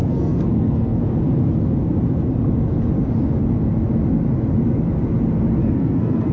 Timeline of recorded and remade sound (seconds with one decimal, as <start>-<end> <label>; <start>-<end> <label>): 0.0-1.0 remade; 1.0-5.6 recorded; 5.6-6.3 remade